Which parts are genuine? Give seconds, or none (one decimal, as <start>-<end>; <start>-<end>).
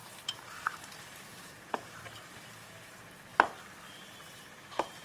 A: 3.3-3.9